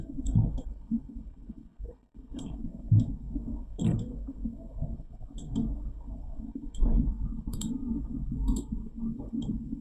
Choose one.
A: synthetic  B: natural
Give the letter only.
A